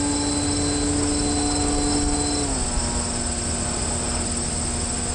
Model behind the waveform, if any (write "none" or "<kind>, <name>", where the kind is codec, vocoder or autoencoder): none